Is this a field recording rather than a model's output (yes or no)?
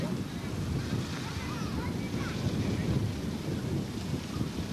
yes